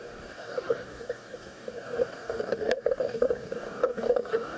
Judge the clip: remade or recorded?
remade